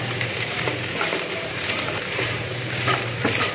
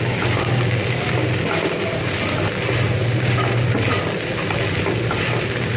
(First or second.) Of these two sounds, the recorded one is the second